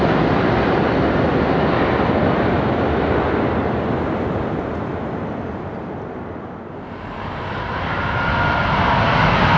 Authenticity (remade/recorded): recorded